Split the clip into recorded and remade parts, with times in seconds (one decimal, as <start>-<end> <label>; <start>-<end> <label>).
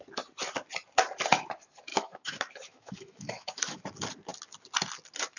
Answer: 0.0-1.9 recorded; 1.9-3.8 remade; 3.8-5.4 recorded